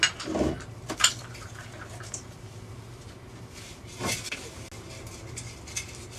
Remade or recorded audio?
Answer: recorded